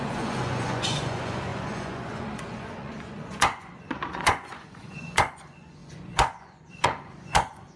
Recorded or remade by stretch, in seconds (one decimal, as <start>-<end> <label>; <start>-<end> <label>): 0.0-7.8 remade